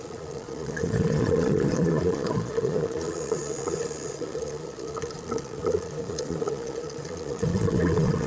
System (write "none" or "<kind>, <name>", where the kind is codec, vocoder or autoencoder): vocoder, Vocos